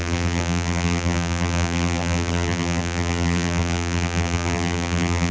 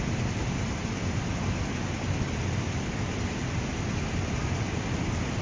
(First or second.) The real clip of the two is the second